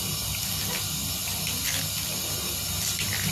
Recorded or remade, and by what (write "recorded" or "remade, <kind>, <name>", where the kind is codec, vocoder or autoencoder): recorded